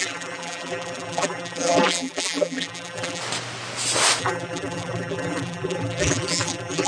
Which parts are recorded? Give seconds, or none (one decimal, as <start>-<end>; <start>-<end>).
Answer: 3.2-4.2